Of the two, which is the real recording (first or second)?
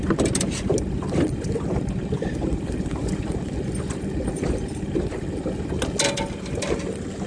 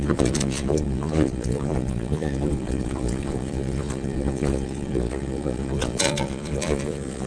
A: first